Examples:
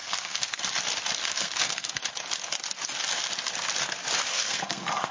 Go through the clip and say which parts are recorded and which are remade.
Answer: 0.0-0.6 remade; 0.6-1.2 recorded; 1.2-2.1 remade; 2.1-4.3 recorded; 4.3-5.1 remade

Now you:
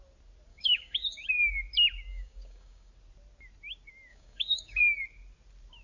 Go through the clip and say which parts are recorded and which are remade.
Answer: 0.0-0.5 recorded; 0.5-1.3 remade; 1.3-2.1 recorded; 2.1-2.9 remade; 2.9-4.1 recorded; 4.1-4.8 remade; 4.8-5.8 recorded

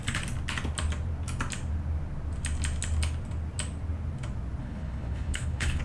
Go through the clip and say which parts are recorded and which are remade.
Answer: 0.0-4.6 recorded; 4.6-5.8 remade

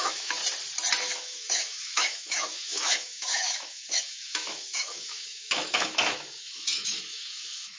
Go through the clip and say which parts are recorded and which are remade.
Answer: 0.0-0.4 remade; 0.4-1.0 recorded; 1.0-7.8 remade

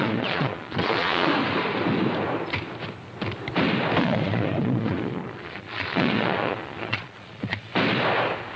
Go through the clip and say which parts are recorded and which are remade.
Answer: 0.0-1.3 remade; 1.3-4.0 recorded; 4.0-7.7 remade; 7.7-8.6 recorded

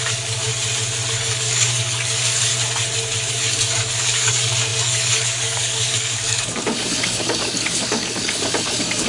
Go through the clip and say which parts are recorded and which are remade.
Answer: 0.0-0.5 remade; 0.5-1.1 recorded; 1.1-2.5 remade; 2.5-3.3 recorded; 3.3-9.1 remade